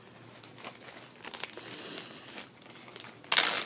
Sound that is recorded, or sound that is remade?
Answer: recorded